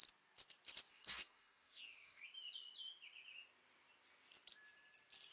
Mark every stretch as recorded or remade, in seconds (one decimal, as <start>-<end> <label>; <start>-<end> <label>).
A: 0.0-0.9 recorded; 0.9-2.2 remade; 2.2-5.3 recorded